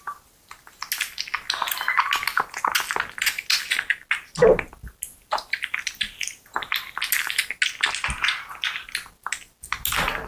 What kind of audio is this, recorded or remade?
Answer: recorded